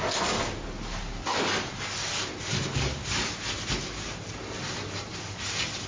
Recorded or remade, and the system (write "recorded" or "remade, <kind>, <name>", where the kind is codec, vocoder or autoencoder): recorded